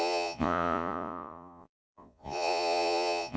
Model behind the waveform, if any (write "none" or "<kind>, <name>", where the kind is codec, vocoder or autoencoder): vocoder, Vocos